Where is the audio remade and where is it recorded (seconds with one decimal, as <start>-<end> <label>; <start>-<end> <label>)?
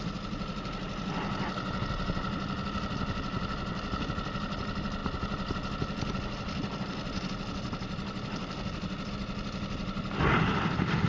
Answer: 0.0-11.1 recorded